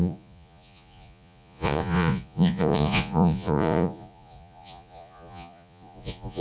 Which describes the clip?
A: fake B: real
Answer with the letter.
A